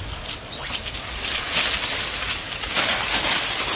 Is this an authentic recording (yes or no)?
yes